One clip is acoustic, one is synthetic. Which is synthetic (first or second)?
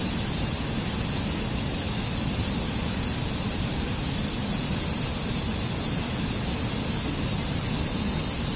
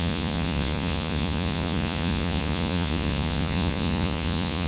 second